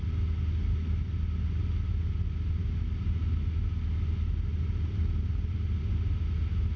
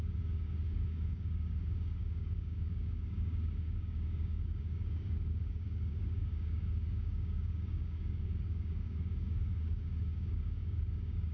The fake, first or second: second